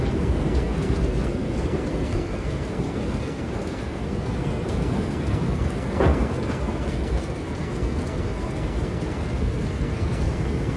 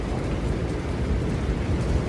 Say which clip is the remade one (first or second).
first